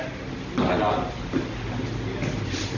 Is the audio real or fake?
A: real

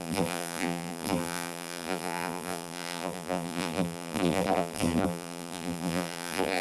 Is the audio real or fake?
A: fake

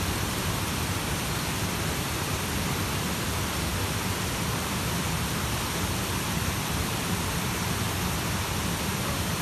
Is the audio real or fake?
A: fake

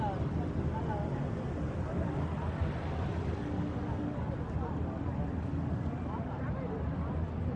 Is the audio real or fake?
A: real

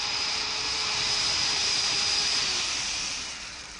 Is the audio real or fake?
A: fake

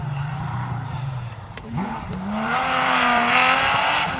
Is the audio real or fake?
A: fake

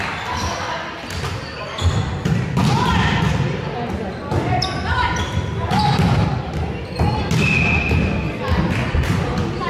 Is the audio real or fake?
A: real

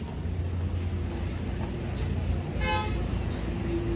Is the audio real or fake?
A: real